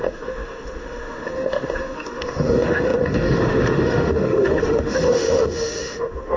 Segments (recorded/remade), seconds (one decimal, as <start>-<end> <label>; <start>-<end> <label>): 0.0-6.4 remade